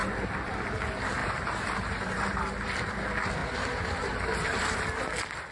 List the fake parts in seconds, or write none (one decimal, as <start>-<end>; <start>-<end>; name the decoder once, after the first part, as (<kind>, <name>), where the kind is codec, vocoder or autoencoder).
1.2-2.9 (vocoder, BigVGAN v2); 3.4-4.8